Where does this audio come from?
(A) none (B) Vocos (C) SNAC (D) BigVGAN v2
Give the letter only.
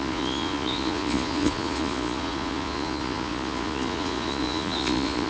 B